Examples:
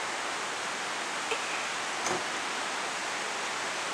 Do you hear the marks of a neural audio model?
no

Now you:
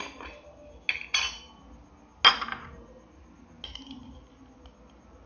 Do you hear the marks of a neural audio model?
no